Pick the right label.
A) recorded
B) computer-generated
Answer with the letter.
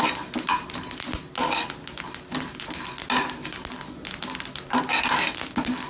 A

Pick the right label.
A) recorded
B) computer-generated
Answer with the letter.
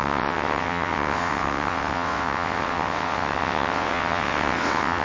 B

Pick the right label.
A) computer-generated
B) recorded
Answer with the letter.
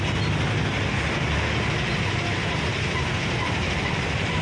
B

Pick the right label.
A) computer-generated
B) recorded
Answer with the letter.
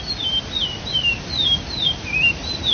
B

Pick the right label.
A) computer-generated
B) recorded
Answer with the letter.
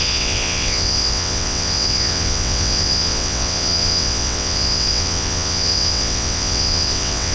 A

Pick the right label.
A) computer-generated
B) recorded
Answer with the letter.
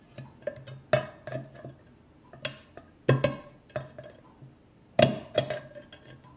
B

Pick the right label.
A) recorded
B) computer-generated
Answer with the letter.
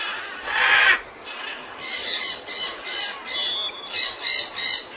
A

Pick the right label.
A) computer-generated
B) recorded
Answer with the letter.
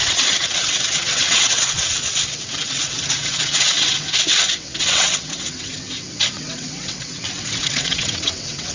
A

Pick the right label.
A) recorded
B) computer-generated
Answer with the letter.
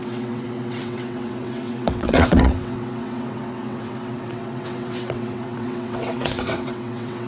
B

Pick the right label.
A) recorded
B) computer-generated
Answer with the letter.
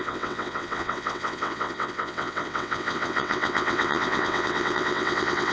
B